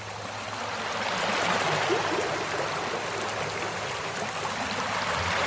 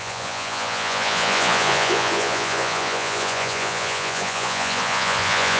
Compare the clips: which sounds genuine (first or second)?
first